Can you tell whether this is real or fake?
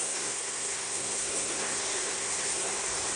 fake